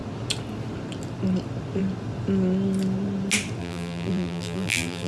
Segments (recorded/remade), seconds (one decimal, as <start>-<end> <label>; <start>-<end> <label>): 0.0-3.6 recorded; 3.6-5.1 remade